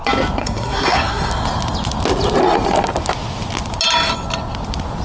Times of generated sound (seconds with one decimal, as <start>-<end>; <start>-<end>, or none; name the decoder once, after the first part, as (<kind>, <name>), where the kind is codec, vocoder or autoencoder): 0.4-1.3 (codec, SNAC)